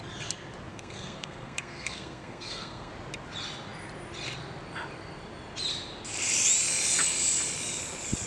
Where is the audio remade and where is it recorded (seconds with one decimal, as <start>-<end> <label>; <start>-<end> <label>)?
0.0-0.7 recorded; 0.7-2.9 remade; 2.9-8.3 recorded